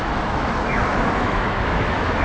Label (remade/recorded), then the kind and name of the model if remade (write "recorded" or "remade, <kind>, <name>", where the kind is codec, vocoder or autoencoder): remade, autoencoder, DAC-VAE